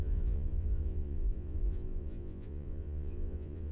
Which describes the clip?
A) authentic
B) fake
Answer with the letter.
B